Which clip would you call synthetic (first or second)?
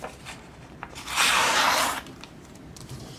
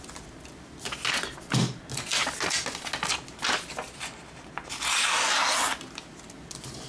first